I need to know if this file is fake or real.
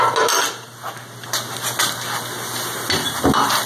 real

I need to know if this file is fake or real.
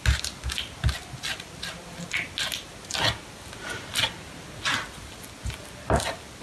real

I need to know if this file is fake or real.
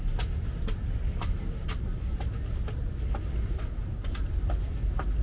real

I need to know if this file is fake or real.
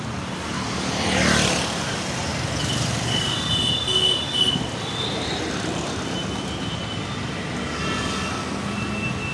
real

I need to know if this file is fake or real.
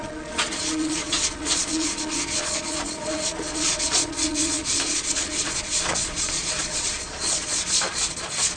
fake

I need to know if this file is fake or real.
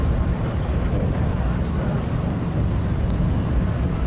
real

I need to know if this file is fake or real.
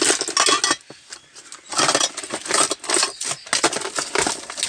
real